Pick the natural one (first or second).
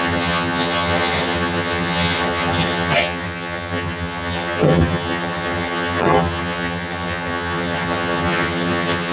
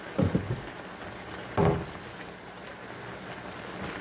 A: second